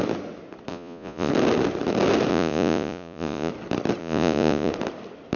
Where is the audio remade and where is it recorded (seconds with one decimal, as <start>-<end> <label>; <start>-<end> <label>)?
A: 0.0-0.7 recorded; 0.7-1.3 remade; 1.3-2.3 recorded; 2.3-3.5 remade; 3.5-4.0 recorded; 4.0-4.7 remade; 4.7-5.4 recorded